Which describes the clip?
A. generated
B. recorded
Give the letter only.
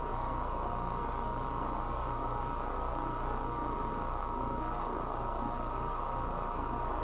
A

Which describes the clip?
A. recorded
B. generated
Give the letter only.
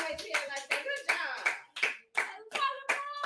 A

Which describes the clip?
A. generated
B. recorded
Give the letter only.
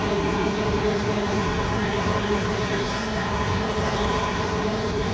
A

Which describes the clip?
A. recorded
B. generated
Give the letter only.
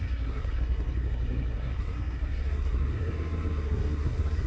B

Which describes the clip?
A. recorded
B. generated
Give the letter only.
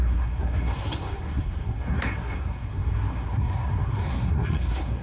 B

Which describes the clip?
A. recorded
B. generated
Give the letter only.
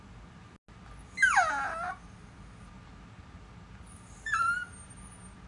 A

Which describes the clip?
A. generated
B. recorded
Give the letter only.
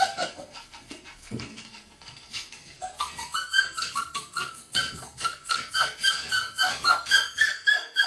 A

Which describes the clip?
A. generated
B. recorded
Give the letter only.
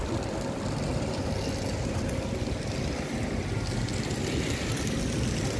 B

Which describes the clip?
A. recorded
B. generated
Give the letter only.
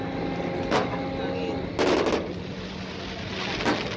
A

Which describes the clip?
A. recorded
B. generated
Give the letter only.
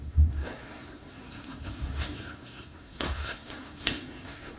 B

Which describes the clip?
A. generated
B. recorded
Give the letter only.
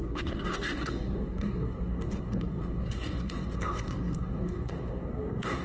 A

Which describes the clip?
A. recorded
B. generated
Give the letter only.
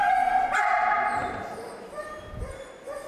A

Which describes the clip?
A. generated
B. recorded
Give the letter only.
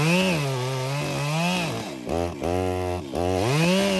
B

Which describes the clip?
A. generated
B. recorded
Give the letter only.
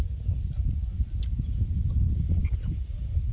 B